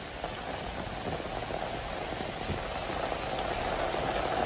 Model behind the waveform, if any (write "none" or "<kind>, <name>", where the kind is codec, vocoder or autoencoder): none